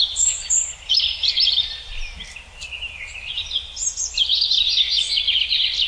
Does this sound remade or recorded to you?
recorded